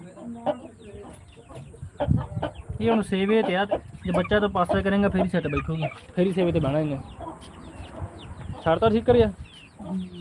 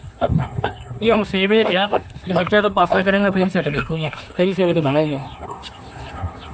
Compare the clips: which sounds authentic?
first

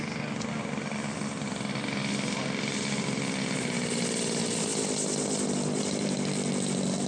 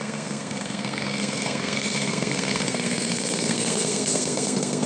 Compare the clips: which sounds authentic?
first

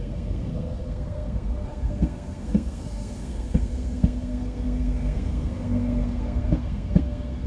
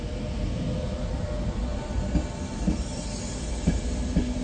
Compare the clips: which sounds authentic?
second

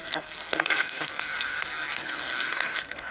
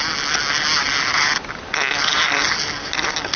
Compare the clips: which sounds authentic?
second